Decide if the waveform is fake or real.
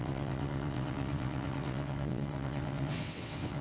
fake